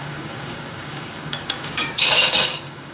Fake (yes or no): yes